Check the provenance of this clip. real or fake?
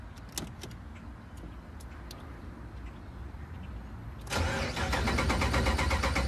real